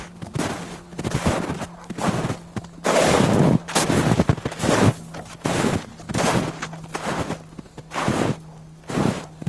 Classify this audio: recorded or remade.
recorded